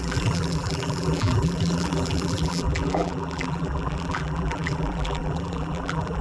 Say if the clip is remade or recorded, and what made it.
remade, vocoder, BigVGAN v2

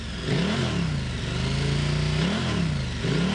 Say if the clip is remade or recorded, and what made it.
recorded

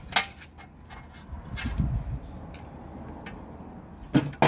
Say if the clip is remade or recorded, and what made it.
recorded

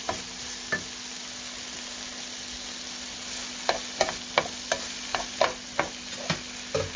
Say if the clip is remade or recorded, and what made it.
recorded